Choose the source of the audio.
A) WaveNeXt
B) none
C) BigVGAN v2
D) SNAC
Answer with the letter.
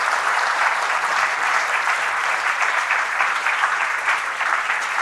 C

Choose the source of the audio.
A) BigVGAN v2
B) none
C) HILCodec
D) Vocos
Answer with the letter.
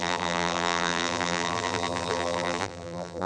A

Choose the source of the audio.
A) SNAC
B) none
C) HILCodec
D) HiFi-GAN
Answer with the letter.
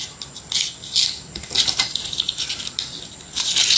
B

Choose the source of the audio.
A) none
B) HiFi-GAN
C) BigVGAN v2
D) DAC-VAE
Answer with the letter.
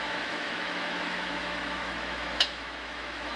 D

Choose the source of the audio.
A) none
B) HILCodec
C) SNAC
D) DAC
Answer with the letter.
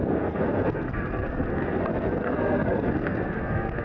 C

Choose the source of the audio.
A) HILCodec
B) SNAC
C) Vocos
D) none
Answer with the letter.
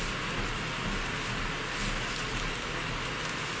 D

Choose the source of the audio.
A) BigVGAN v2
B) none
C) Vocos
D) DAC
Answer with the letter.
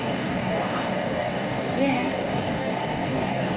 D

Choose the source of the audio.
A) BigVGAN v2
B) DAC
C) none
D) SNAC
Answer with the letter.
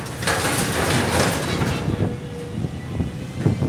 C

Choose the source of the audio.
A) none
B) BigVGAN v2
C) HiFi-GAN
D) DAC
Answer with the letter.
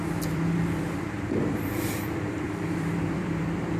B